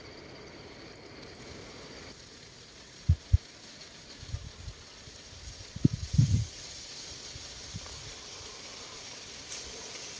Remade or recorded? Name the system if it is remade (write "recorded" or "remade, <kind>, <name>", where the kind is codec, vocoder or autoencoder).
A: recorded